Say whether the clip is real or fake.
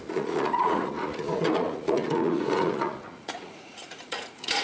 fake